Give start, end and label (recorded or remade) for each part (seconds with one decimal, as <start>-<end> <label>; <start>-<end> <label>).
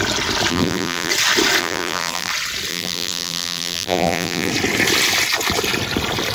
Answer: 0.0-0.5 recorded; 0.5-1.1 remade; 1.1-1.6 recorded; 1.6-2.3 remade; 2.3-2.7 recorded; 2.7-4.5 remade; 4.5-6.3 recorded